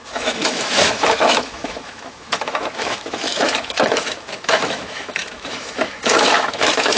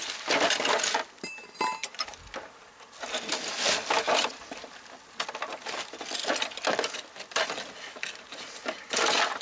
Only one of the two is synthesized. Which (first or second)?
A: first